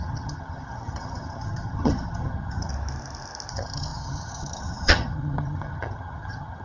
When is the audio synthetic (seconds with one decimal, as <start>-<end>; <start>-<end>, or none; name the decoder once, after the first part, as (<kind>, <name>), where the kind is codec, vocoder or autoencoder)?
0.0-2.7 (vocoder, HiFi-GAN); 3.5-6.6